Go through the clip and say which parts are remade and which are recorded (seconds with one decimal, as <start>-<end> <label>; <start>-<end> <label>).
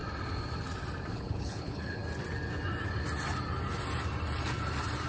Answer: 0.0-1.1 recorded; 1.1-2.0 remade; 2.0-5.1 recorded